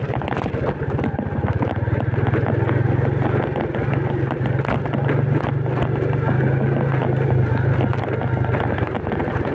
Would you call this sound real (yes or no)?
yes